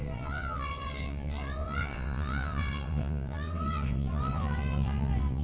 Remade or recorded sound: remade